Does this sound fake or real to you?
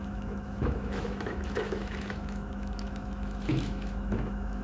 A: fake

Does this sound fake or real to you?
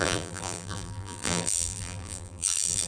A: fake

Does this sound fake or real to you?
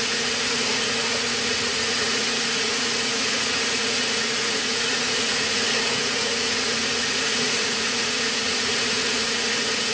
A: fake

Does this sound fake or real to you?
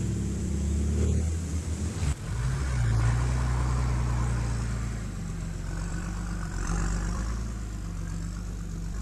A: fake